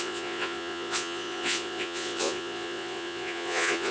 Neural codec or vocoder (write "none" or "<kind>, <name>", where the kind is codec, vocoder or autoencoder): vocoder, Vocos